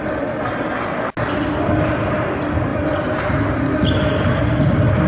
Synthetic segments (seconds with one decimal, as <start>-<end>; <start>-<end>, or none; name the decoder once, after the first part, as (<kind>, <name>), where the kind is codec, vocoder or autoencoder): none